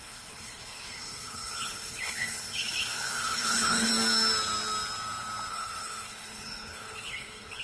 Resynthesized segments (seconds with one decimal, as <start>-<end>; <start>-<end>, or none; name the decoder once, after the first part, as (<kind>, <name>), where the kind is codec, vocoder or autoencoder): 0.0-3.9 (codec, HILCodec); 5.5-7.6